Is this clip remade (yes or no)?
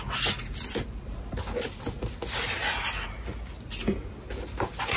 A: no